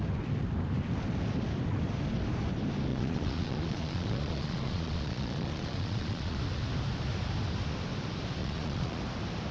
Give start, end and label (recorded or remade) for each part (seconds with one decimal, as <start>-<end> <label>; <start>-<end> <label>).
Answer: 0.0-2.9 recorded; 2.9-6.4 remade; 6.4-8.4 recorded; 8.4-9.0 remade; 9.0-9.5 recorded